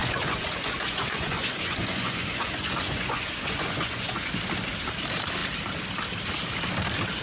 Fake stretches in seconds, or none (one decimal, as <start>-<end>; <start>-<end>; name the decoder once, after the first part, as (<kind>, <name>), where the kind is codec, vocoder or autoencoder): 0.0-4.3 (vocoder, Vocos)